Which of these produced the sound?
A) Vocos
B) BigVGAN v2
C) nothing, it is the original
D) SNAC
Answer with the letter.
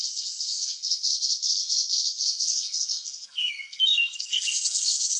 D